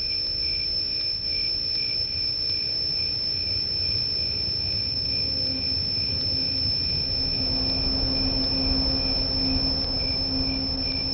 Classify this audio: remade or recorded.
recorded